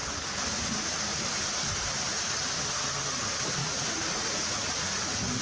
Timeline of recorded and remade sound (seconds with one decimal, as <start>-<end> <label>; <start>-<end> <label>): 0.0-3.6 recorded; 3.6-5.0 remade; 5.0-5.4 recorded

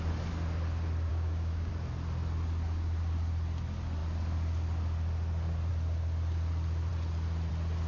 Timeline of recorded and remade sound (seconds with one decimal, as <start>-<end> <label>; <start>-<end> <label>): 0.0-1.1 recorded; 1.1-1.7 remade; 1.7-7.9 recorded

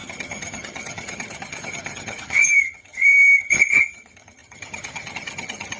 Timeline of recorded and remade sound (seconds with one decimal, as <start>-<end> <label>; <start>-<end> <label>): 0.0-5.8 remade